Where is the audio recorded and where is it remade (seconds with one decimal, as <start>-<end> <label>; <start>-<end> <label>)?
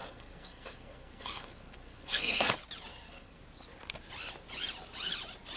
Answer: 0.0-2.5 remade; 2.5-2.9 recorded; 2.9-3.4 remade; 3.4-5.6 recorded